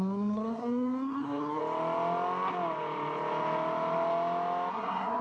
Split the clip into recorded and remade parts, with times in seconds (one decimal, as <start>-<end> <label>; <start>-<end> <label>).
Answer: 0.0-1.6 remade; 1.6-4.7 recorded; 4.7-5.2 remade